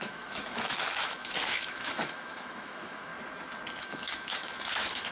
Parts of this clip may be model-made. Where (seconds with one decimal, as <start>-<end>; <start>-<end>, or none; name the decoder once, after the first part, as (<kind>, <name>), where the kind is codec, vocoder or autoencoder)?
0.0-3.1 (autoencoder, DAC-VAE); 3.8-5.1